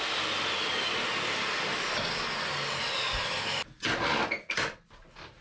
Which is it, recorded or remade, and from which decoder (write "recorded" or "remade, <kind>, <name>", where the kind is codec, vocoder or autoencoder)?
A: recorded